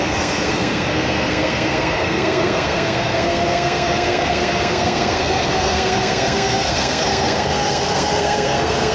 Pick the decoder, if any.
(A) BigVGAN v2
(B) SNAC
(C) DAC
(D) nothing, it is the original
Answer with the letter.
B